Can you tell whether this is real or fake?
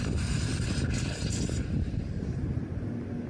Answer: real